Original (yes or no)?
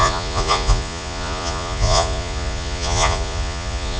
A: no